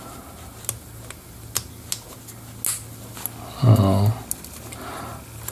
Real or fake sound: real